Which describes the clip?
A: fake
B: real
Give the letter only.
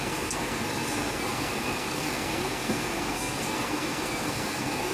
A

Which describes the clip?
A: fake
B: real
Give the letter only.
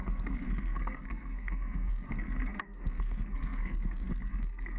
A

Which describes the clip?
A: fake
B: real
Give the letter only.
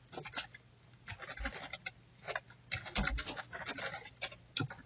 B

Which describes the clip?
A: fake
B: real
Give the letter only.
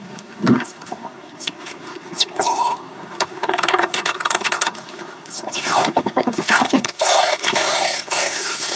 A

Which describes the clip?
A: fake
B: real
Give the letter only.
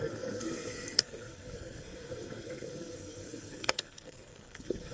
A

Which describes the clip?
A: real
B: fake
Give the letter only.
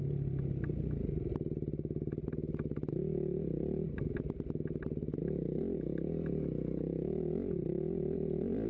A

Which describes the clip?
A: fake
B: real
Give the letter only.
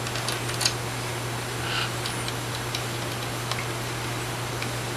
B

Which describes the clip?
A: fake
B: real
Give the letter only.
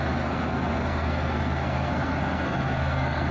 A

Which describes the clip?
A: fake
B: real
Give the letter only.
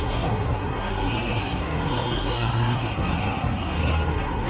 A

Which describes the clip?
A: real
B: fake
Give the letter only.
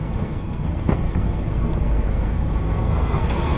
B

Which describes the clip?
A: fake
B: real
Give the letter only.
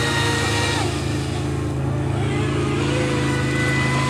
B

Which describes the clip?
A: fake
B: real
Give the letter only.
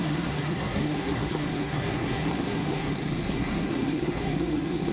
A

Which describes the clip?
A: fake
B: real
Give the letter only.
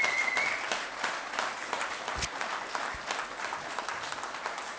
B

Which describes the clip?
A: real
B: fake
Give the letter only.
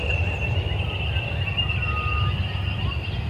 A